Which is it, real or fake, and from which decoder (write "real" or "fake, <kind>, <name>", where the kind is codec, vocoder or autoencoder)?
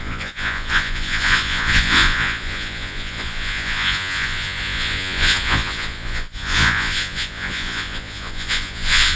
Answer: fake, vocoder, Vocos